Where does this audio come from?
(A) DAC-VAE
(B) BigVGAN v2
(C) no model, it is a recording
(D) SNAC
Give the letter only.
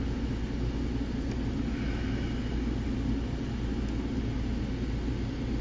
C